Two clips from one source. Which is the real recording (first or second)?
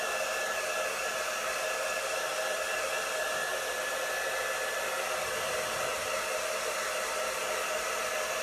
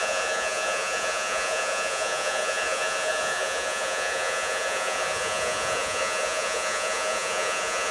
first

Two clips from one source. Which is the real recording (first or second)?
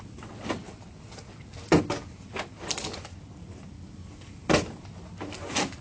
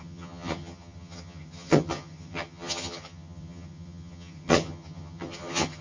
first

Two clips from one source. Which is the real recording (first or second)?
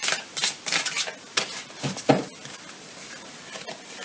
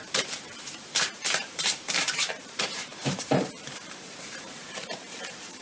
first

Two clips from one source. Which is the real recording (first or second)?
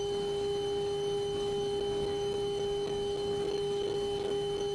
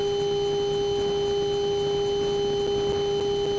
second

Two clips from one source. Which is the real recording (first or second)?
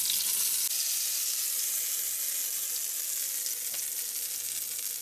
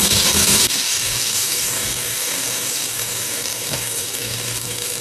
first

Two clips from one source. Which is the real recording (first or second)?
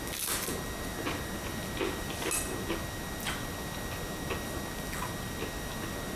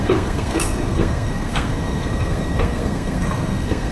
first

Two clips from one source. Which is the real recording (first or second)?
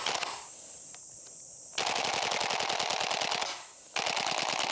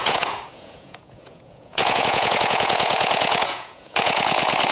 first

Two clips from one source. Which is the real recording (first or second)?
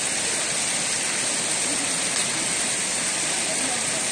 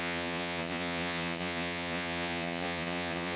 first